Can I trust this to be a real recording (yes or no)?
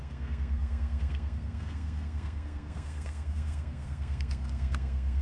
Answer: no